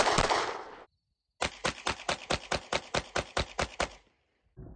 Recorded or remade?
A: recorded